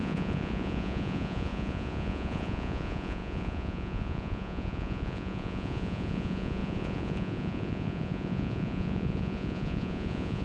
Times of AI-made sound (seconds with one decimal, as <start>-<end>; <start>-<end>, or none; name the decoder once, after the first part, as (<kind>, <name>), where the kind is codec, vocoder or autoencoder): 0.0-10.4 (vocoder, Vocos)